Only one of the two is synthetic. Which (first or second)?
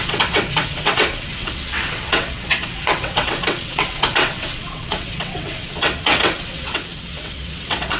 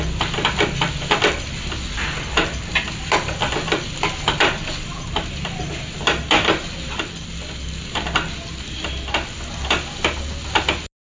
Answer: first